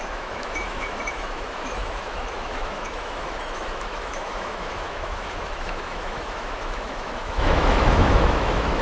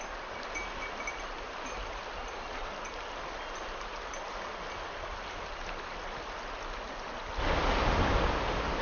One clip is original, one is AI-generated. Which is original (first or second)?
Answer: second